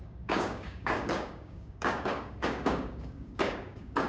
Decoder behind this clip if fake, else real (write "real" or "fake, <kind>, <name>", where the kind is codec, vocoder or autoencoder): fake, codec, DAC